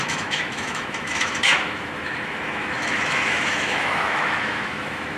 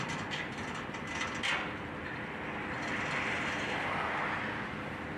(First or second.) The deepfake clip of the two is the first